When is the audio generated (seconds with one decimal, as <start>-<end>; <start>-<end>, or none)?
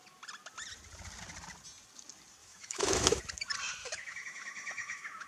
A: 2.4-3.2; 3.8-5.3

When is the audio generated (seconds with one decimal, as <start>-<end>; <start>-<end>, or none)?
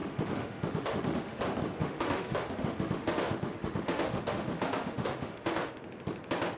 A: 0.0-1.4; 1.8-5.8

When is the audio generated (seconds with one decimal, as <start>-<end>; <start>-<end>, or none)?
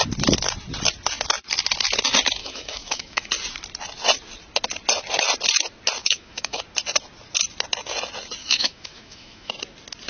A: 2.4-3.3; 6.0-6.6; 8.4-9.5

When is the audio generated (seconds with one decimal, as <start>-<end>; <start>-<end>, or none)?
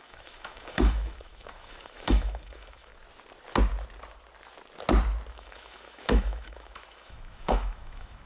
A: 0.0-2.9; 5.3-8.3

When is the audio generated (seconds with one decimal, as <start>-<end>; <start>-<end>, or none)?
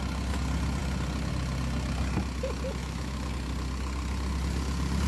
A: 2.8-3.3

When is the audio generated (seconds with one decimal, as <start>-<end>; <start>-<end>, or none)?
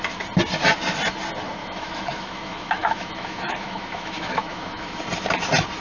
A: 1.6-5.0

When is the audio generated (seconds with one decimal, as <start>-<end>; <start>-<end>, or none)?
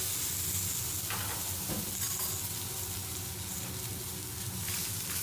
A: none